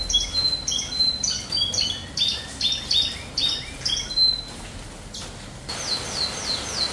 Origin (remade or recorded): recorded